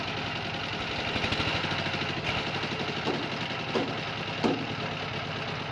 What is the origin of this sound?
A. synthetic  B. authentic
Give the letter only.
B